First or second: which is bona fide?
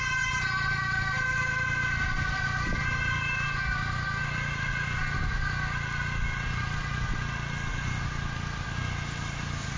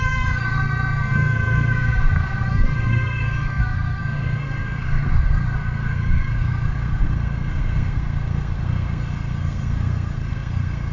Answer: first